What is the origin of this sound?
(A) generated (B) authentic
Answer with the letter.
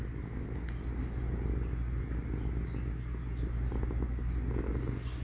B